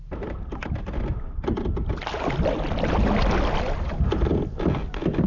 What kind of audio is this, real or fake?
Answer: real